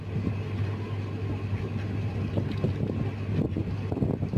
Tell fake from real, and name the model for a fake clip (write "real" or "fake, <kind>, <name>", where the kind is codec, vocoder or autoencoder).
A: real